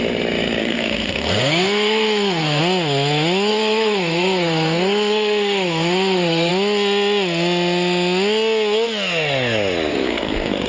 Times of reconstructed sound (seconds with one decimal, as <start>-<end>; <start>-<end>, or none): 0.6-2.6; 3.5-6.5; 9.9-10.7